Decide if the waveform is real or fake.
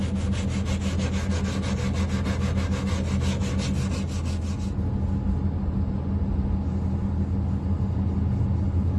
real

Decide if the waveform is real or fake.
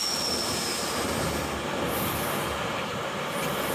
real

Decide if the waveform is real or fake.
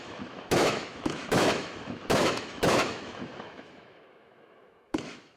fake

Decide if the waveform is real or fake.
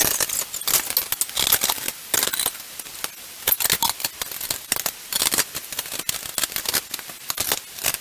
real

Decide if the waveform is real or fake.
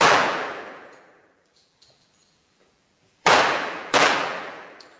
fake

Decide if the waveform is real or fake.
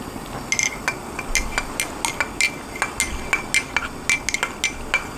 real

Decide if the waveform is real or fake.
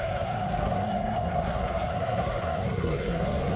fake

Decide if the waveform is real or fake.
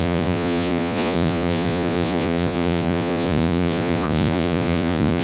fake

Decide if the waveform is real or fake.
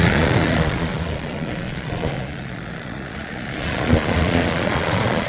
fake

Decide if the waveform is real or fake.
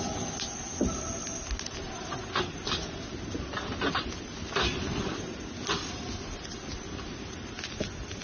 real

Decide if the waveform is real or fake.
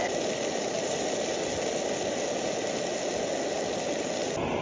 real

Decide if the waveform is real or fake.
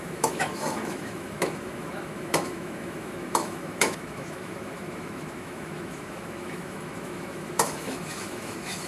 fake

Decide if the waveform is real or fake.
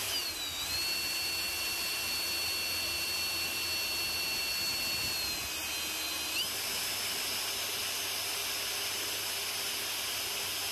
real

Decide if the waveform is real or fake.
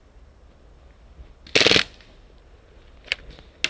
real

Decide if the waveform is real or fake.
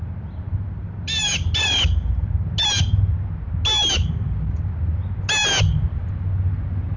real